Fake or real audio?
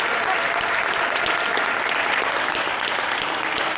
real